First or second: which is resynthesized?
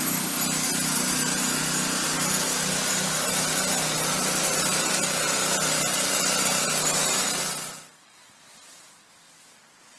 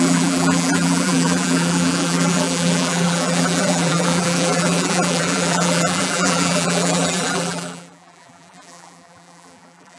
second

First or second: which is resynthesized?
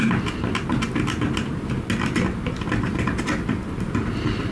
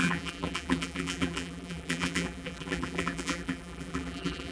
second